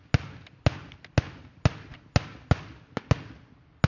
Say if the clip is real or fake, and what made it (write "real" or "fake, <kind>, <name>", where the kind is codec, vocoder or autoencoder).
real